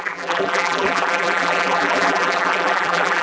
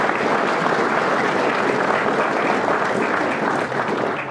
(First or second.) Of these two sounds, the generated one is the first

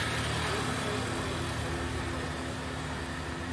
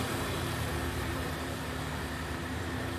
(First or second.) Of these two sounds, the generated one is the second